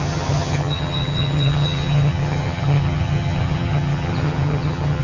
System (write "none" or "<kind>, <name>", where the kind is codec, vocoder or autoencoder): vocoder, HiFi-GAN